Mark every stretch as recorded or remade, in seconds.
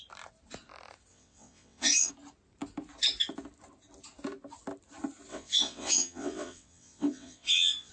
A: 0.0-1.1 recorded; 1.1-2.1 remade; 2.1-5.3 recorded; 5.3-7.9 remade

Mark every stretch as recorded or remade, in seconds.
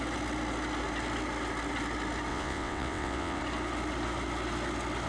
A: 0.0-2.3 recorded; 2.3-3.4 remade; 3.4-5.1 recorded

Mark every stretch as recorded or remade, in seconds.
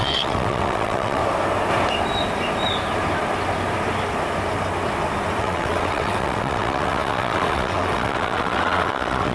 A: 0.0-1.2 remade; 1.2-5.4 recorded; 5.4-9.3 remade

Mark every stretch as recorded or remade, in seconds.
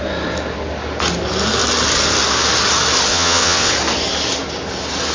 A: 0.0-3.1 recorded; 3.1-3.7 remade; 3.7-5.1 recorded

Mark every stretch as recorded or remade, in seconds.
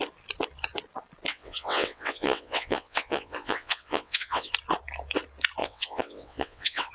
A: 0.0-1.3 recorded; 1.3-4.5 remade; 4.5-5.6 recorded; 5.6-6.9 remade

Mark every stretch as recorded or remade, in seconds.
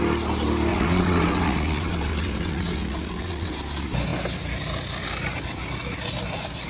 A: 0.0-0.7 recorded; 0.7-3.6 remade; 3.6-6.7 recorded